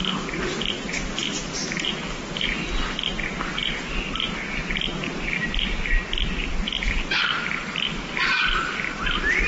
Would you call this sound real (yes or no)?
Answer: yes